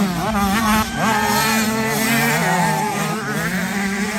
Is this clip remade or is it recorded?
recorded